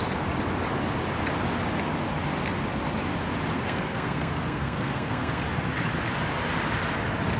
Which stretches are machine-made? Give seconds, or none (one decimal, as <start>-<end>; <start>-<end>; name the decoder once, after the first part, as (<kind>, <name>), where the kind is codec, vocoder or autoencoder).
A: 3.5-5.4 (codec, SNAC)